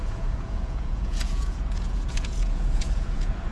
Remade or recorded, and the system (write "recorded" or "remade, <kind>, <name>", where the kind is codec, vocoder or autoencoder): remade, vocoder, Vocos